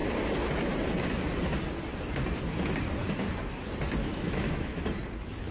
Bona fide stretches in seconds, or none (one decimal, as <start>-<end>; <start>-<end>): 0.0-4.0; 4.8-5.5